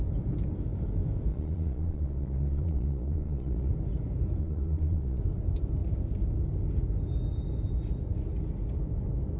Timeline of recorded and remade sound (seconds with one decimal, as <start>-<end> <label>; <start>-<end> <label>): 0.0-1.3 recorded; 1.3-3.7 remade; 3.7-4.4 recorded; 4.4-5.2 remade; 5.2-9.4 recorded